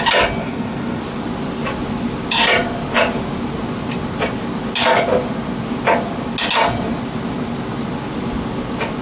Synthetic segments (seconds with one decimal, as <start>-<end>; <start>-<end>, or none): 0.4-1.0